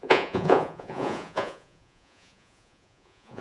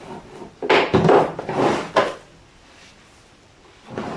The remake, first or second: first